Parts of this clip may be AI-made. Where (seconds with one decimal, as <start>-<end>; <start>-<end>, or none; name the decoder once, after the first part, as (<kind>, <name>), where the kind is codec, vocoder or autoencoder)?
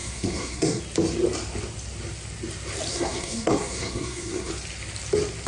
0.0-0.8 (codec, SNAC); 2.9-4.5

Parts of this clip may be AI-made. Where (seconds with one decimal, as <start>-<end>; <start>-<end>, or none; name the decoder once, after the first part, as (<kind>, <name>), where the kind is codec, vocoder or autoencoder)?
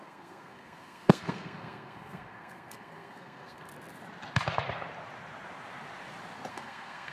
0.0-3.7 (codec, SNAC); 6.5-7.1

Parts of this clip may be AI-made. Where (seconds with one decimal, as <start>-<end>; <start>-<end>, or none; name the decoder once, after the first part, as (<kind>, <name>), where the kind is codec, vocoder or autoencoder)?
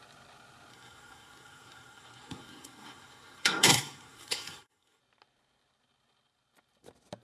0.7-5.0 (codec, SNAC)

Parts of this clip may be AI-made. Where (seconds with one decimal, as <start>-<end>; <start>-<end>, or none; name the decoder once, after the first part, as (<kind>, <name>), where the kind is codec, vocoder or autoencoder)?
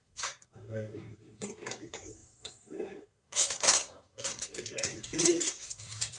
0.0-6.2 (codec, SNAC)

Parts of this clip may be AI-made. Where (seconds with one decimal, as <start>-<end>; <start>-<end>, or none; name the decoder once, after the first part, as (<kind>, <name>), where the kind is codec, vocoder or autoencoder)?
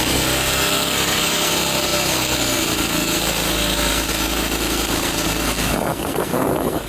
0.0-6.9 (codec, SNAC)